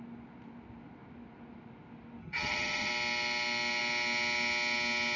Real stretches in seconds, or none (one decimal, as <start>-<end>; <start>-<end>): 0.0-2.2; 2.9-5.2